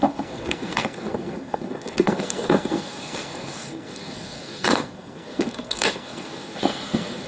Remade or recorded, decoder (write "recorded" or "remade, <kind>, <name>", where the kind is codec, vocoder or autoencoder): remade, codec, SNAC